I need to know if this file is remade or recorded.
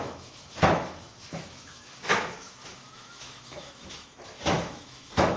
remade